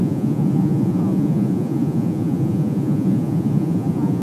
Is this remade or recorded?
remade